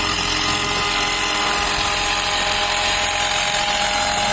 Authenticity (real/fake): real